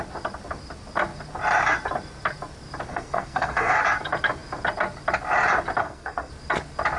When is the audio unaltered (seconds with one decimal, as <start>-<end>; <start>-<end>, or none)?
0.0-2.9; 3.8-5.8; 6.3-7.0